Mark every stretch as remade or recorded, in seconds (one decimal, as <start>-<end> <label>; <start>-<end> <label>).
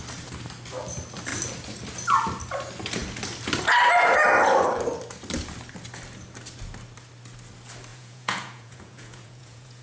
0.0-7.9 recorded; 7.9-9.8 remade